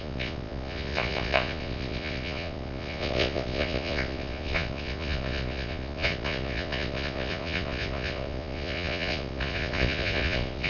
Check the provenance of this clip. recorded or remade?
remade